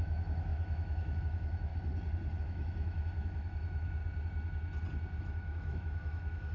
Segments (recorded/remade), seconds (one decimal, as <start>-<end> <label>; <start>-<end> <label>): 0.0-1.7 remade; 1.7-2.4 recorded; 2.4-4.0 remade; 4.0-5.2 recorded; 5.2-6.5 remade